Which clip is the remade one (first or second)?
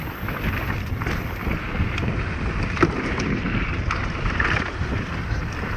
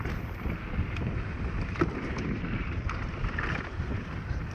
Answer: second